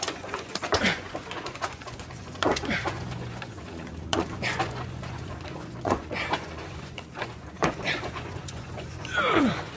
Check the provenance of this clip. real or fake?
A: fake